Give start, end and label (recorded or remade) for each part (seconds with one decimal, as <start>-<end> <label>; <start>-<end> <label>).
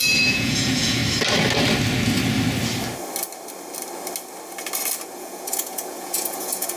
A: 0.0-1.0 remade; 1.0-5.1 recorded; 5.1-6.8 remade